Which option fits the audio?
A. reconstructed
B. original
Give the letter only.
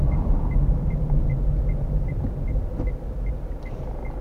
B